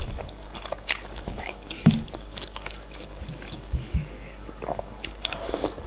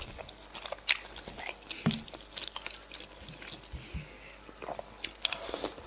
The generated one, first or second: first